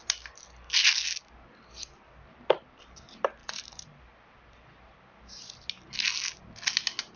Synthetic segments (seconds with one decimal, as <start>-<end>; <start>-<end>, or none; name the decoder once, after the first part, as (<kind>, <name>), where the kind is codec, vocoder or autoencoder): 3.4-4.0 (vocoder, BigVGAN v2)